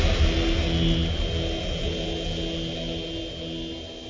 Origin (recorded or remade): recorded